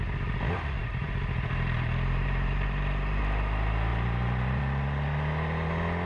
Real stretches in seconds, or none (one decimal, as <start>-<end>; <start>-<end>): 0.0-0.8; 3.2-3.9; 4.6-6.1